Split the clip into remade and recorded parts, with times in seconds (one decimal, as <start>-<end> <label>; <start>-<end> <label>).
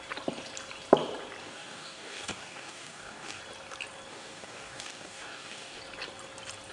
0.0-1.4 recorded; 1.4-3.4 remade; 3.4-4.1 recorded; 4.1-5.8 remade; 5.8-6.7 recorded